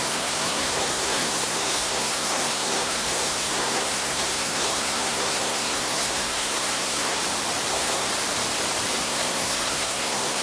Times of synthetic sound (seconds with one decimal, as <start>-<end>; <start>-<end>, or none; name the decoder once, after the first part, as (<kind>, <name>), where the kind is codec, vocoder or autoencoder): 0.0-7.2 (codec, SNAC); 7.7-8.1; 9.0-10.4